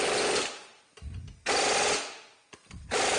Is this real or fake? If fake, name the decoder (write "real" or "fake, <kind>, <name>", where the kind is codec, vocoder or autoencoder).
real